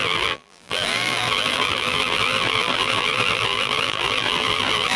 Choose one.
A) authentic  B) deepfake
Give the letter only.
B